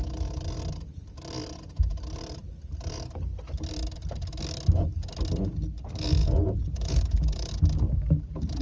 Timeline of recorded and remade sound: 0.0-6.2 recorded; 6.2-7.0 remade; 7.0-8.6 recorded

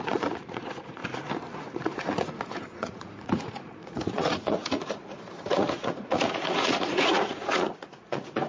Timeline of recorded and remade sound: 0.0-1.0 remade; 1.0-1.6 recorded; 1.6-8.5 remade

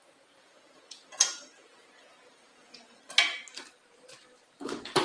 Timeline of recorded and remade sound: 0.0-3.0 remade; 3.0-5.0 recorded

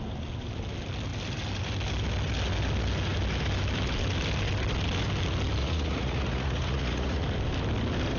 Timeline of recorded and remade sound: 0.0-5.6 recorded; 5.6-7.2 remade; 7.2-8.2 recorded